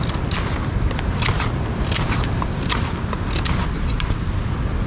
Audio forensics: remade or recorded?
recorded